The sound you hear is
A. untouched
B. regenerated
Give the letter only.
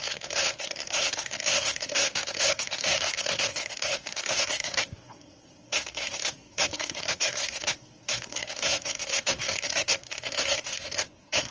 B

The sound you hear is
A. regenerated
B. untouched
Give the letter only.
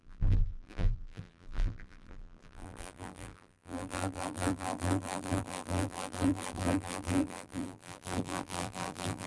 A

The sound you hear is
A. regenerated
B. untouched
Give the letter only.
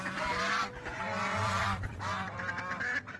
A